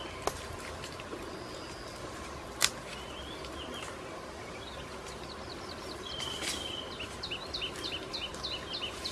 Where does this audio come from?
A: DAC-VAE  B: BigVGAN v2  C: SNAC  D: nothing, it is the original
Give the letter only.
D